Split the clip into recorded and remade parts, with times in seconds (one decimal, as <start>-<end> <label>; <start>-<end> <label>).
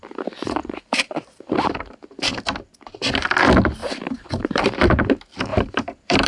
0.0-0.6 recorded; 0.6-1.7 remade; 1.7-3.8 recorded; 3.8-4.6 remade; 4.6-5.5 recorded; 5.5-6.3 remade